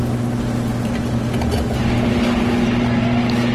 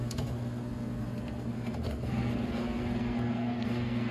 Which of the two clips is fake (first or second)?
second